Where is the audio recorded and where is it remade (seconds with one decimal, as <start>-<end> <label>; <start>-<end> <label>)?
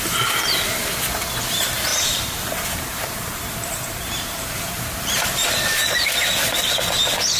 0.0-1.9 recorded; 1.9-6.3 remade; 6.3-7.4 recorded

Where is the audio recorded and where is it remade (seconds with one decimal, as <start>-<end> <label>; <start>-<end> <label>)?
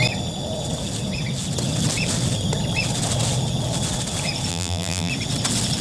0.0-4.5 recorded; 4.5-5.1 remade; 5.1-5.8 recorded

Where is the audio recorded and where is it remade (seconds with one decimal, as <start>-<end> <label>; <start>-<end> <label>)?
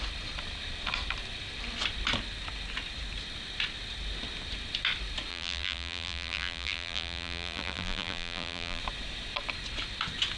0.0-5.3 recorded; 5.3-8.8 remade; 8.8-10.4 recorded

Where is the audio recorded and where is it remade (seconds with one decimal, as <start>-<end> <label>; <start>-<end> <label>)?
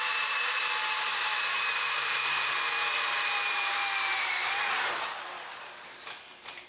0.0-6.7 remade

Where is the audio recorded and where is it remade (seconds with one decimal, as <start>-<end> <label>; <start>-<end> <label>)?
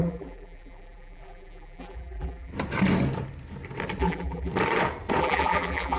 0.0-2.5 remade; 2.5-4.0 recorded; 4.0-4.5 remade; 4.5-5.2 recorded; 5.2-6.0 remade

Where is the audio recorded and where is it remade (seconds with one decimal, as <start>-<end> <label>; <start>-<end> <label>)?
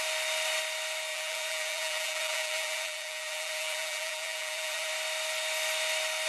0.0-1.1 recorded; 1.1-4.9 remade; 4.9-6.3 recorded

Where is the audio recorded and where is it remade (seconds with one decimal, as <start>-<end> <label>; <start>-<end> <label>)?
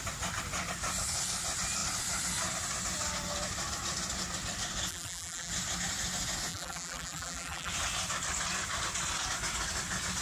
0.0-4.9 recorded; 4.9-5.5 remade; 5.5-6.5 recorded; 6.5-7.7 remade; 7.7-10.2 recorded